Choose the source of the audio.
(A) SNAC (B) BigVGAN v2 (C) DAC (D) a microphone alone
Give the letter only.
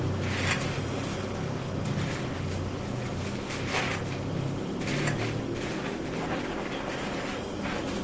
D